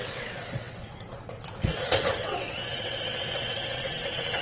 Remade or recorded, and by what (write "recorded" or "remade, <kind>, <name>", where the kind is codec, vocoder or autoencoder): remade, vocoder, WaveNeXt